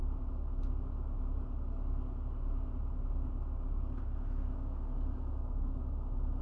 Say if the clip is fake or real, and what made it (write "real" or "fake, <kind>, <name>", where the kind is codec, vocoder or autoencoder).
real